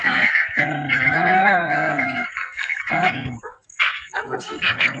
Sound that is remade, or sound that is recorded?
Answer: remade